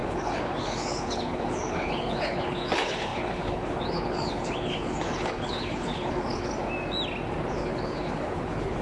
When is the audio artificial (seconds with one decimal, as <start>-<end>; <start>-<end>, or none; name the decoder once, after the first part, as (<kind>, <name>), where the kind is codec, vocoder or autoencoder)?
0.0-6.5 (codec, HILCodec); 7.5-8.8